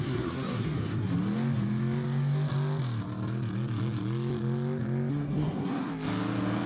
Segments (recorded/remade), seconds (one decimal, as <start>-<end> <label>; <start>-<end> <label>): 0.0-1.1 remade; 1.1-5.1 recorded; 5.1-5.9 remade; 5.9-6.7 recorded